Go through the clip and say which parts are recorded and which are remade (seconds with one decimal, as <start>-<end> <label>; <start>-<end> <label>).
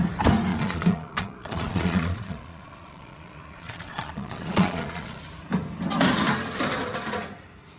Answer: 0.0-0.5 recorded; 0.5-5.2 remade; 5.2-7.8 recorded